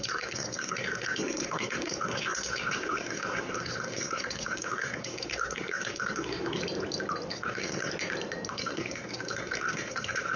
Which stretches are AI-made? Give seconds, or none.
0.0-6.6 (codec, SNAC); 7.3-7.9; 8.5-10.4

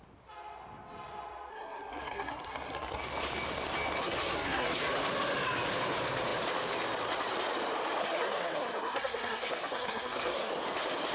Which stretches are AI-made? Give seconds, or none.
1.5-3.0 (codec, SNAC); 4.0-4.8; 8.0-10.5

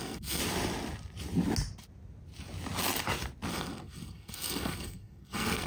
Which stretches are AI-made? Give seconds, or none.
0.0-0.4 (codec, SNAC); 3.5-5.7